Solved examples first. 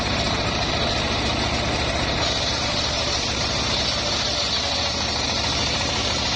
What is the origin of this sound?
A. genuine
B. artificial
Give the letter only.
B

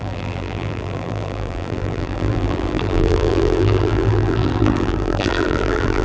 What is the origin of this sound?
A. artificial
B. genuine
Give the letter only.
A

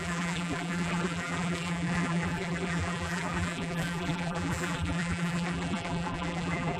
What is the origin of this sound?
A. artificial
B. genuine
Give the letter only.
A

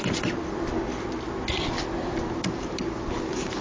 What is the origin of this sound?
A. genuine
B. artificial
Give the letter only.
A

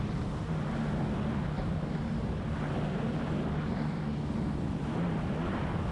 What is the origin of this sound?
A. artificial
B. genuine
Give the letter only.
B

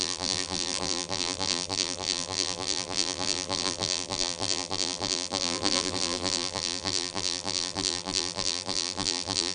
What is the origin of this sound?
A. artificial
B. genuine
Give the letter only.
A